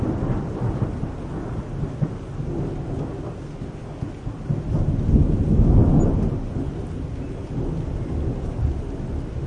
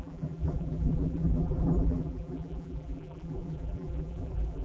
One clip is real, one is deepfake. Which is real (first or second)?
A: first